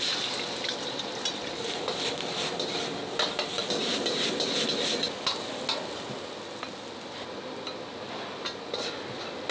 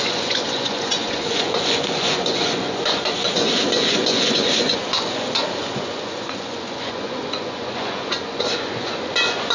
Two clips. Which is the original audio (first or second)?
first